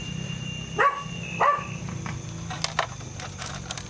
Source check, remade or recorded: recorded